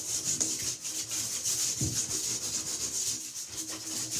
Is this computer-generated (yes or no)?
no